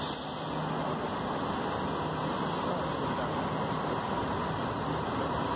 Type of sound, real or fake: real